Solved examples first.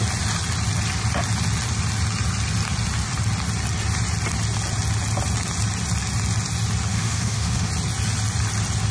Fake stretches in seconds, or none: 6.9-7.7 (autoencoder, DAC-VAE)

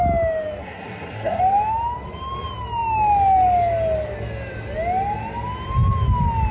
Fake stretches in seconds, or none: 0.6-1.4 (codec, SNAC)

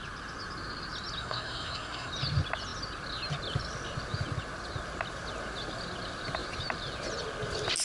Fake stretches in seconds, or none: 1.2-2.1 (codec, SNAC)

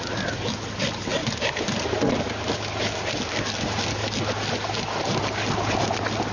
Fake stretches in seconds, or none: none

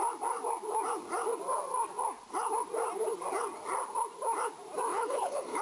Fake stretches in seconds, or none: 4.9-5.6 (codec, HILCodec)

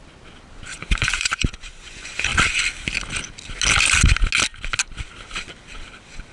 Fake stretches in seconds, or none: 1.0-2.3 (vocoder, Vocos)

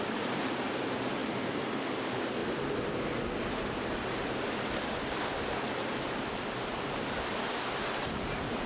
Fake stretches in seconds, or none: 0.0-2.4 (vocoder, BigVGAN v2); 5.7-7.3; 8.0-8.7

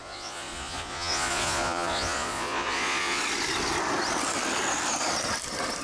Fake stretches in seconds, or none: 0.0-3.2 (vocoder, Vocos)